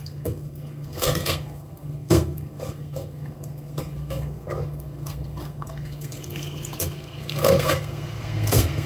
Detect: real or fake fake